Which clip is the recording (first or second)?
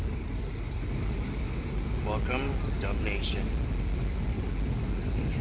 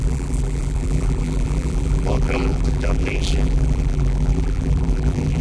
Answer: first